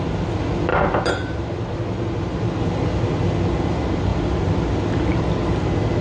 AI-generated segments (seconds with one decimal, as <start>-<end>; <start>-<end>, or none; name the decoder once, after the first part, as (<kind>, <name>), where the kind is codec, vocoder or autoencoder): none